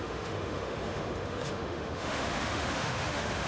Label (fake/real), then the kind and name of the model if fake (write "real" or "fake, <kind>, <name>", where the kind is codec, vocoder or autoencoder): fake, autoencoder, DAC-VAE